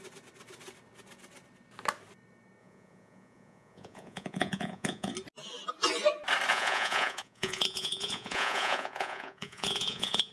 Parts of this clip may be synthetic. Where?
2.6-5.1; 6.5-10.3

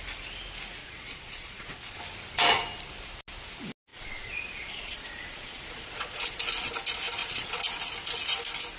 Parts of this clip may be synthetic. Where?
0.8-2.0; 3.9-6.7; 7.2-7.8

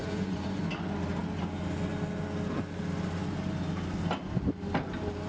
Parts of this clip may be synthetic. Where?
0.0-0.6

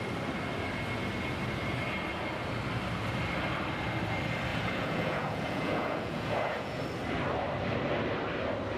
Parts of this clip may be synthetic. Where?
4.5-6.8

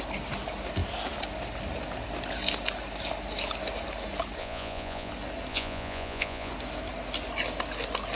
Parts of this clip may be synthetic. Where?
4.4-5.1; 5.5-6.5

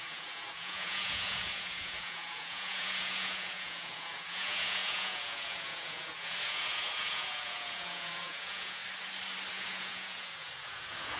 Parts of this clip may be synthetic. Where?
0.0-8.8; 9.5-11.2

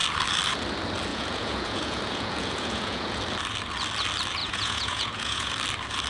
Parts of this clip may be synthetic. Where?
1.1-3.2; 4.4-5.5

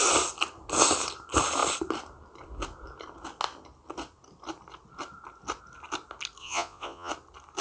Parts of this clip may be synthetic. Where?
6.4-7.1